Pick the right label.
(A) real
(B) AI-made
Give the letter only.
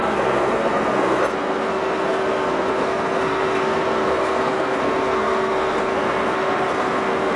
B